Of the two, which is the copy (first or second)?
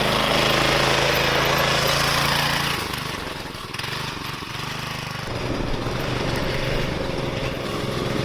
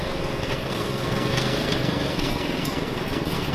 second